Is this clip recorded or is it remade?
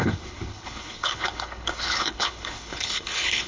remade